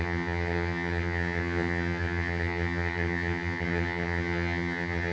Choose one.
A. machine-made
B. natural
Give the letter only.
A